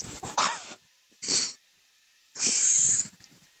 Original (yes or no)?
no